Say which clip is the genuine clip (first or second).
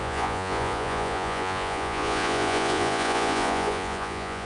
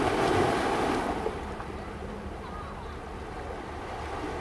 second